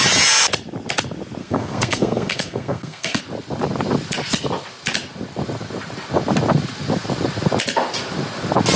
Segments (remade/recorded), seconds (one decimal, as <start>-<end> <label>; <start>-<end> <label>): 0.0-1.4 recorded; 1.4-3.2 remade; 3.2-8.8 recorded

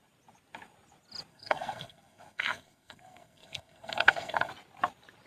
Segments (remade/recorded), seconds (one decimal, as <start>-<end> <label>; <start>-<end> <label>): 0.0-1.3 recorded; 1.3-4.5 remade; 4.5-5.3 recorded

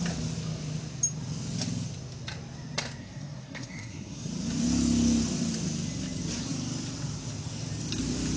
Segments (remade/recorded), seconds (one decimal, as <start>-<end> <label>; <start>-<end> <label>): 0.0-3.0 recorded; 3.0-4.3 remade; 4.3-8.4 recorded

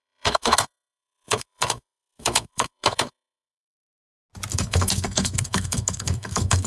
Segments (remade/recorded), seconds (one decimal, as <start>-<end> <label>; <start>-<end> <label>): 0.0-4.0 remade; 4.0-4.5 recorded; 4.5-6.7 remade